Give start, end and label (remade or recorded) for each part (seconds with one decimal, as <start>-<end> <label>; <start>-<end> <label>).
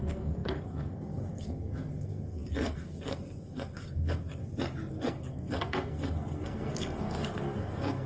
0.0-4.4 remade; 4.4-4.9 recorded; 4.9-8.1 remade